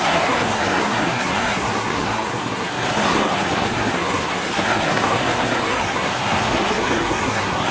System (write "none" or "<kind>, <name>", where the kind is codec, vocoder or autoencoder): codec, SNAC